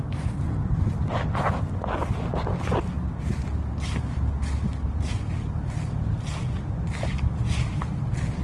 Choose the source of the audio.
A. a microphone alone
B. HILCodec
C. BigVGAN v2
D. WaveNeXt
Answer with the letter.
A